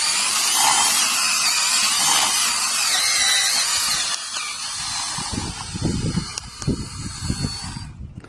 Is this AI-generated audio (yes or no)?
no